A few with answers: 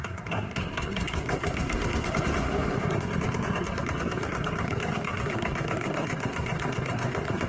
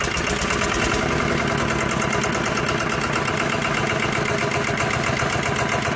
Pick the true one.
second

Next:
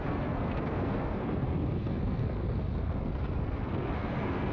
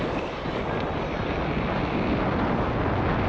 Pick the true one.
second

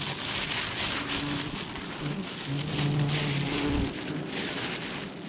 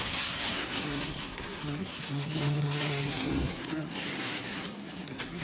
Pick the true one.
first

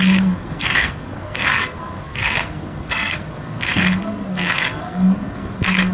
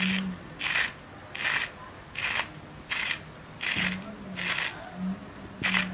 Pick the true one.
second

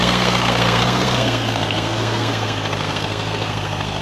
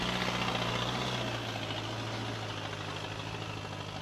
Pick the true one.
second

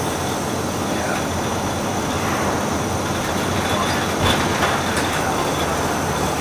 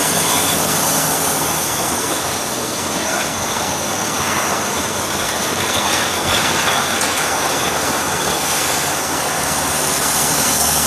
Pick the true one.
first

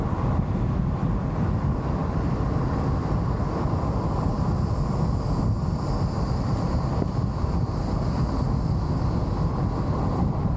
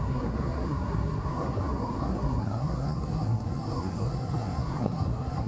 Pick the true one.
first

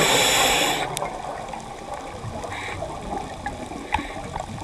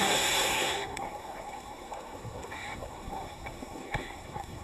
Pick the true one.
first